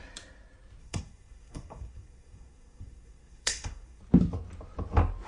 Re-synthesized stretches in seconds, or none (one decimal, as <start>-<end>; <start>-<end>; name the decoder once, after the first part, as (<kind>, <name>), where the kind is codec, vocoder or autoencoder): 0.8-4.0 (codec, SNAC)